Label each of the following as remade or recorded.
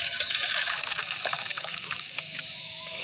remade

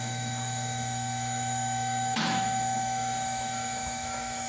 remade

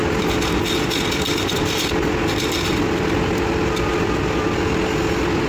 recorded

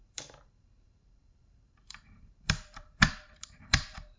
remade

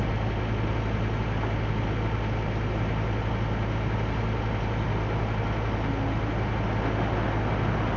recorded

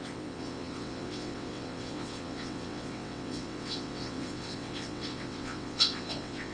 remade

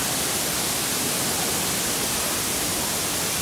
remade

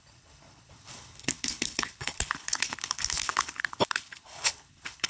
remade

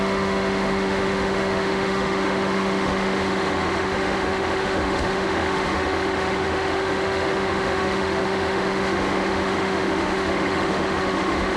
remade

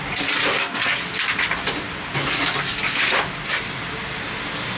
recorded